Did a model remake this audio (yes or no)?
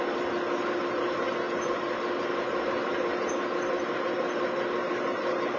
no